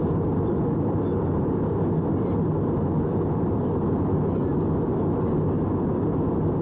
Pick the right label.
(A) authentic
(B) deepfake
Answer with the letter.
A